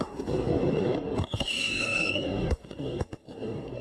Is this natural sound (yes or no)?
no